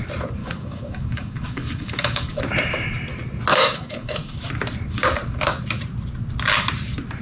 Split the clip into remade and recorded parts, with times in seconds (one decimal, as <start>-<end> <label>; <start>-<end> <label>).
0.0-0.4 recorded; 0.4-2.4 remade; 2.4-3.5 recorded; 3.5-4.5 remade; 4.5-7.2 recorded